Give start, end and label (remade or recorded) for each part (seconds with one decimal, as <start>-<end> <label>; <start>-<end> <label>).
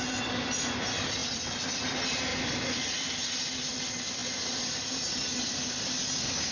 0.0-1.2 recorded; 1.2-1.8 remade; 1.8-2.3 recorded; 2.3-3.6 remade; 3.6-6.5 recorded